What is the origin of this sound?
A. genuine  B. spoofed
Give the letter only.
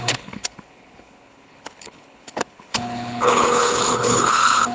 B